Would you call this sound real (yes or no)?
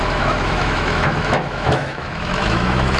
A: no